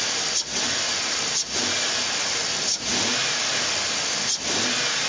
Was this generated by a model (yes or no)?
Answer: no